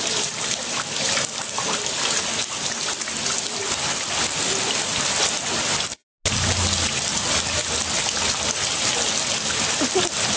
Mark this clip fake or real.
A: real